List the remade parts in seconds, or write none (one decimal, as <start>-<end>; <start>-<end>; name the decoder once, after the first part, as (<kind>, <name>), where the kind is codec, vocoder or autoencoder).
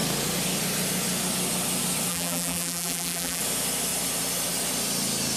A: 2.1-3.4 (vocoder, BigVGAN v2)